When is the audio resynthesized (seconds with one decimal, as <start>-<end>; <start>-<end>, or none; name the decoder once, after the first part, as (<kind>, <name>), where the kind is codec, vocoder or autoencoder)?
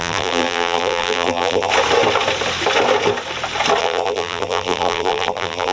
0.0-1.7 (vocoder, BigVGAN v2); 3.8-5.7